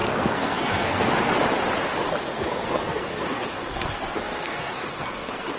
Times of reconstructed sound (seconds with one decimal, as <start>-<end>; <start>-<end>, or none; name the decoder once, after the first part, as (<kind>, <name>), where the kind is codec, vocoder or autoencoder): 0.0-1.1 (codec, SNAC); 2.3-5.6